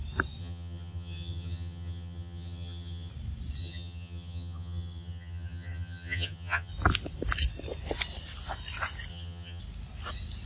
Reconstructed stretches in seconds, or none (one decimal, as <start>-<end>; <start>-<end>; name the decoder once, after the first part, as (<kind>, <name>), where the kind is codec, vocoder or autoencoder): 0.4-3.1 (vocoder, HiFi-GAN); 3.6-6.7; 9.1-9.6